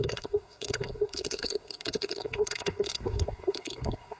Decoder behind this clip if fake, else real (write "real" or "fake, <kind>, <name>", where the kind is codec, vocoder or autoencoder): fake, codec, SNAC